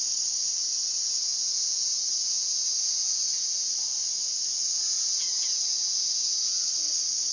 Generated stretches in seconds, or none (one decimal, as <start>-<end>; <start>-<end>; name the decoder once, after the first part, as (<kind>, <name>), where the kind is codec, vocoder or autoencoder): 0.6-3.7 (vocoder, Vocos); 4.6-6.7